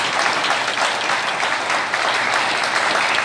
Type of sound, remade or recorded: recorded